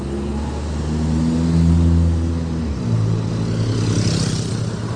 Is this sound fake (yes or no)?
no